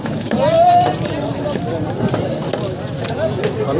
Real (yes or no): no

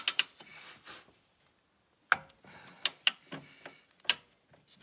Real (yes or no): yes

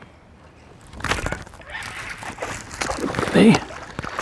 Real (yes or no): yes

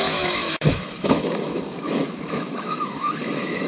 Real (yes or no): no